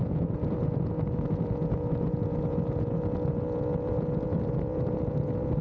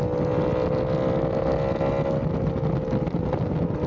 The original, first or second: second